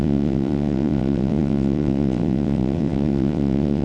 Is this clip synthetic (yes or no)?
yes